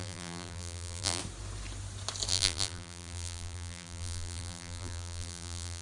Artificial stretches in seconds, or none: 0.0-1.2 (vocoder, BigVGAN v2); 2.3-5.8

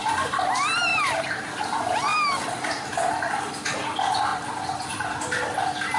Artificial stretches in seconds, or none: 0.9-1.5 (vocoder, BigVGAN v2); 2.1-3.7; 4.3-4.9